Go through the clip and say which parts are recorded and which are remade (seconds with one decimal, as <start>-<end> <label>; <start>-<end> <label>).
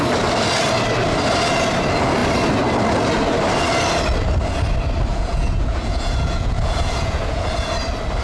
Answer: 0.0-5.1 recorded; 5.1-7.7 remade; 7.7-8.2 recorded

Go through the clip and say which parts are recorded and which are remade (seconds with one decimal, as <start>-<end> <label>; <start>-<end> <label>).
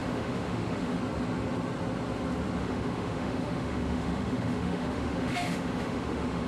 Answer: 0.0-1.0 remade; 1.0-2.6 recorded; 2.6-6.5 remade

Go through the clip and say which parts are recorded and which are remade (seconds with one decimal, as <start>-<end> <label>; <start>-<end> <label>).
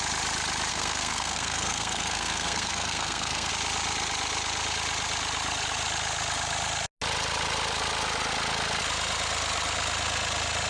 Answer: 0.0-0.7 recorded; 0.7-3.5 remade; 3.5-10.7 recorded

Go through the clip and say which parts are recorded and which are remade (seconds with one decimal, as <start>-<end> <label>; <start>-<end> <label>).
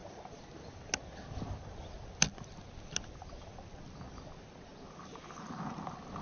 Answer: 0.0-6.2 recorded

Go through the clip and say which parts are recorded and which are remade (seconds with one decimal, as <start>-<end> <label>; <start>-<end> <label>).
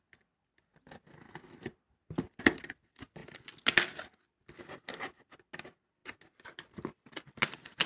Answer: 0.0-7.9 recorded